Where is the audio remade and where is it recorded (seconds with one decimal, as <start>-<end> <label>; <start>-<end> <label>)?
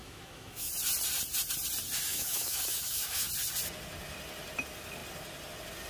0.0-0.7 remade; 0.7-2.1 recorded; 2.1-3.3 remade; 3.3-5.9 recorded